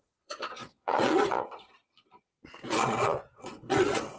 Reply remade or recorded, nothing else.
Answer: remade